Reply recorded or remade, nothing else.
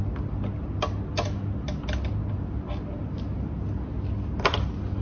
recorded